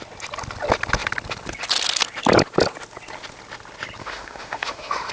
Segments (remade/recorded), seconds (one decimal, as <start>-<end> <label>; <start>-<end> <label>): 0.0-4.0 recorded; 4.0-5.1 remade